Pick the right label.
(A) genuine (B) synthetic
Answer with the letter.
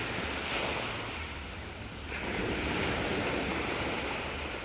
A